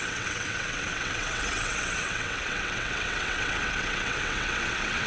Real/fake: fake